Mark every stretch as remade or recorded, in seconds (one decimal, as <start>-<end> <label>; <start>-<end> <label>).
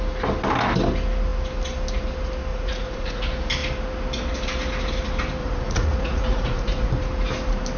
0.0-2.5 recorded; 2.5-3.2 remade; 3.2-5.4 recorded; 5.4-6.9 remade; 6.9-7.8 recorded